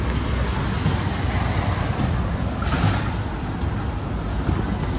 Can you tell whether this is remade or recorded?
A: recorded